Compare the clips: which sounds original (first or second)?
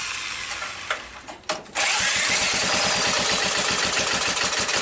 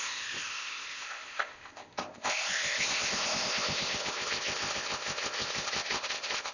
first